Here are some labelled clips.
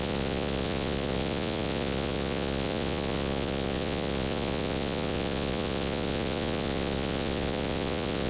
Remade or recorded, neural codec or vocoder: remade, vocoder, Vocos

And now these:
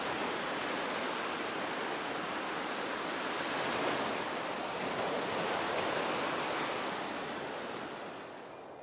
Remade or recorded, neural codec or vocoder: recorded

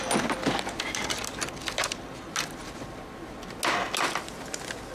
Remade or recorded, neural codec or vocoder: recorded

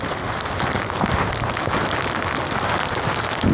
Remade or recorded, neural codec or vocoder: recorded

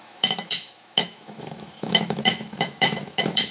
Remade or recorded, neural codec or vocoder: remade, autoencoder, DAC-VAE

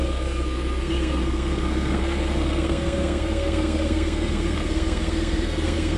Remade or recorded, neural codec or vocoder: remade, codec, SNAC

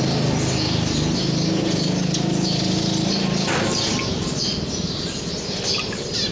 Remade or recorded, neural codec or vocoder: recorded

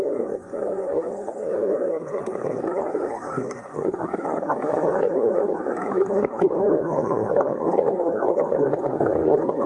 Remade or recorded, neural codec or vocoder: remade, codec, SNAC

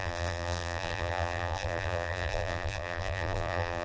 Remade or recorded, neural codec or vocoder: remade, vocoder, BigVGAN v2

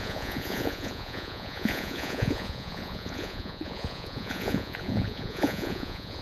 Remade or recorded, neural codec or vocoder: remade, vocoder, Vocos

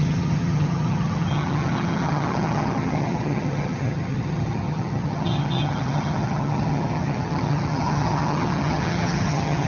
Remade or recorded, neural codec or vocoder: remade, vocoder, HiFi-GAN